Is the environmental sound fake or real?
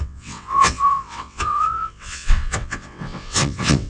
fake